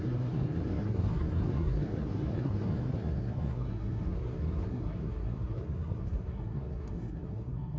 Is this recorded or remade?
remade